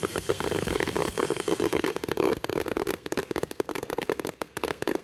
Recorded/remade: remade